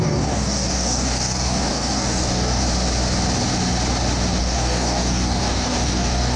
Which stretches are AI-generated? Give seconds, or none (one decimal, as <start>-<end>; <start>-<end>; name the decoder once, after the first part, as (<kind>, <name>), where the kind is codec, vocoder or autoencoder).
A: 0.0-2.6 (codec, DAC); 4.4-6.4